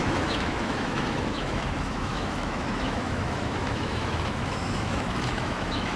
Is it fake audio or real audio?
fake